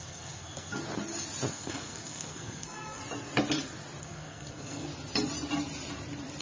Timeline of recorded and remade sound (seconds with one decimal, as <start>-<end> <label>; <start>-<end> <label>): 0.0-0.7 remade; 0.7-1.5 recorded; 1.5-3.0 remade; 3.0-4.0 recorded; 4.0-4.9 remade; 4.9-6.4 recorded